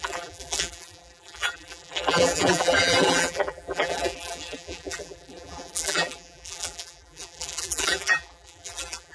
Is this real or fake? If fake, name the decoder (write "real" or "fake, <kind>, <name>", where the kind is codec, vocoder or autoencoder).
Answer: fake, vocoder, BigVGAN v2